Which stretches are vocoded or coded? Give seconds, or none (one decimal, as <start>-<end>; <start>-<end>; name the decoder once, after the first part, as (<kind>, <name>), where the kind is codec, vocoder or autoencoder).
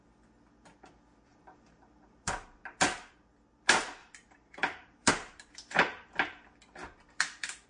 1.3-2.3 (vocoder, BigVGAN v2); 4.0-5.1